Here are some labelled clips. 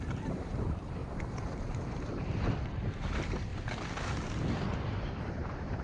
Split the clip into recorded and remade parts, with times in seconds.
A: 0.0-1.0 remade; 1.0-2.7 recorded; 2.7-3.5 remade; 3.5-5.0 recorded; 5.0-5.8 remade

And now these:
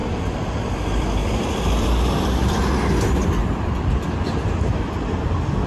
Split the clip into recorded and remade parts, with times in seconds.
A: 0.0-1.2 remade; 1.2-3.4 recorded; 3.4-5.7 remade

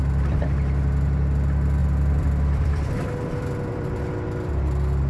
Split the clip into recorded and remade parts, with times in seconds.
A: 0.0-1.8 recorded; 1.8-3.9 remade; 3.9-5.1 recorded

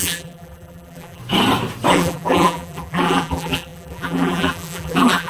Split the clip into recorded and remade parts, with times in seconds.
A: 0.0-1.2 remade; 1.2-1.9 recorded; 1.9-5.3 remade

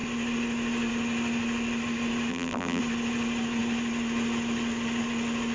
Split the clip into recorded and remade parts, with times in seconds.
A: 0.0-2.3 recorded; 2.3-2.8 remade; 2.8-5.5 recorded